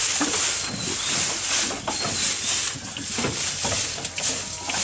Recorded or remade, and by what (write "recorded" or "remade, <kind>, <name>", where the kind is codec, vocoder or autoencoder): recorded